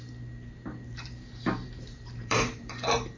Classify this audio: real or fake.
fake